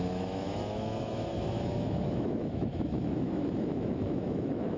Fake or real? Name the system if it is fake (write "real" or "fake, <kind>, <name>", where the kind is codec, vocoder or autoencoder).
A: fake, autoencoder, DAC-VAE